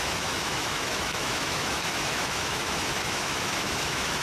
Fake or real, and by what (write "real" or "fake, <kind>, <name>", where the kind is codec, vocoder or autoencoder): fake, autoencoder, DAC-VAE